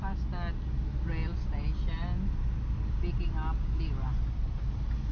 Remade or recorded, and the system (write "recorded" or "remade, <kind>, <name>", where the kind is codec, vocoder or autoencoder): recorded